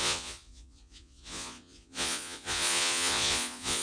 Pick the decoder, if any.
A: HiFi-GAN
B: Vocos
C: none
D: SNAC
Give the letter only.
B